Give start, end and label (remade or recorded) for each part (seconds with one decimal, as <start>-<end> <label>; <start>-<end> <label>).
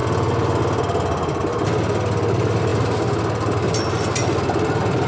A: 0.0-5.1 recorded